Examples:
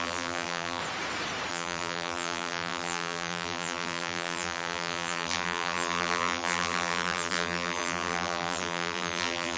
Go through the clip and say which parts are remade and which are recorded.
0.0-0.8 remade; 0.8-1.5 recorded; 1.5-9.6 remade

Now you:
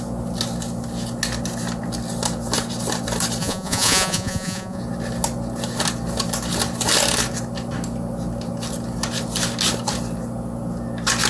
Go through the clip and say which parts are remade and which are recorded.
0.0-3.4 recorded; 3.4-4.8 remade; 4.8-11.3 recorded

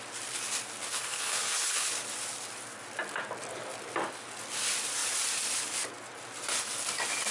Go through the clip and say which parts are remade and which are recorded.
0.0-0.9 recorded; 0.9-1.9 remade; 1.9-7.3 recorded